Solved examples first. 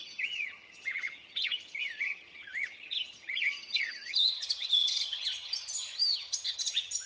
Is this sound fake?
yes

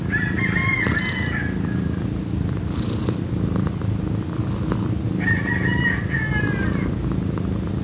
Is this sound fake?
no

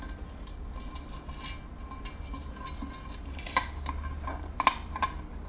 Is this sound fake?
no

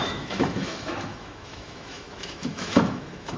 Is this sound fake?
yes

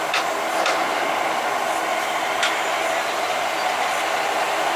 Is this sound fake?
no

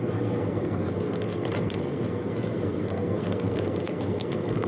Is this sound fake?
yes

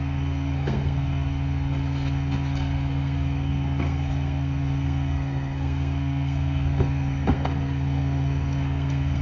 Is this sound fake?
yes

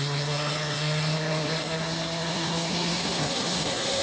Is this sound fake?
yes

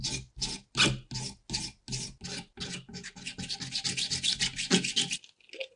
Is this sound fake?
no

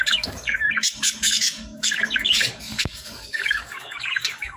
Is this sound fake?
yes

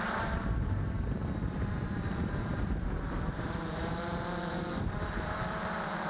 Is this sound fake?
yes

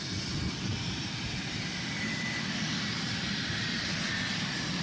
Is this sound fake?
yes